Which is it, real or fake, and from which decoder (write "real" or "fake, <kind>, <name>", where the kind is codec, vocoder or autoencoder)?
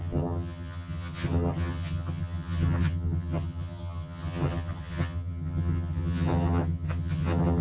fake, vocoder, HiFi-GAN